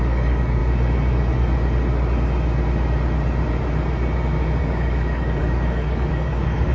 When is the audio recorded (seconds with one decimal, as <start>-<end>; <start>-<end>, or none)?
0.6-4.6